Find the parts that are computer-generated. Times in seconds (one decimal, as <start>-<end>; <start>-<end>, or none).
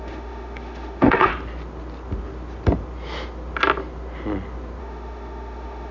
0.0-1.3; 4.8-5.9